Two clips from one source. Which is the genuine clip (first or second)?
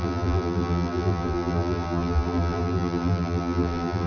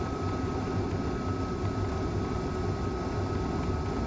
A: second